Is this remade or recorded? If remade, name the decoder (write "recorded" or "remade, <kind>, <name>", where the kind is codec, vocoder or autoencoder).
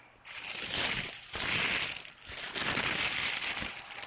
recorded